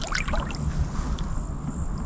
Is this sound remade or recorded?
recorded